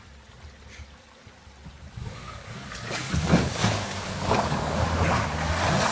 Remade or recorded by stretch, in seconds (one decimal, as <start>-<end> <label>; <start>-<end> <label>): 0.0-2.0 recorded; 2.0-5.5 remade; 5.5-5.9 recorded